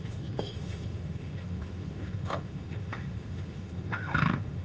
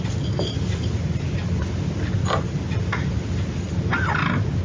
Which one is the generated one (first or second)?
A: first